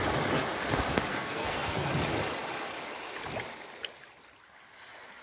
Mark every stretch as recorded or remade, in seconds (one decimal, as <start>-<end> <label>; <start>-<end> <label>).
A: 0.0-1.1 recorded; 1.1-1.9 remade; 1.9-5.2 recorded